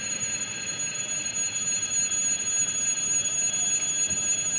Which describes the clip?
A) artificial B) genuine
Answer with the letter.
B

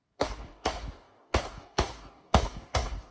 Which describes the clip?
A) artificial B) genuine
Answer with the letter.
A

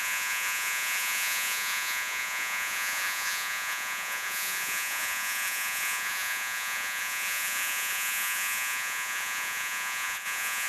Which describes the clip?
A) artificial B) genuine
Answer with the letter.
A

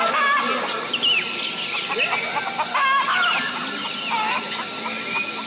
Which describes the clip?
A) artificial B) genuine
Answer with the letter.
B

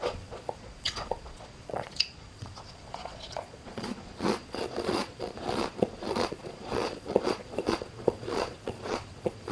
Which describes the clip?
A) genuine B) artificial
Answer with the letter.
B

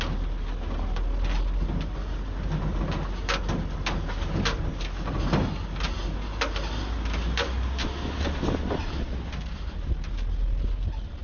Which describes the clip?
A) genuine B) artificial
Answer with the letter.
A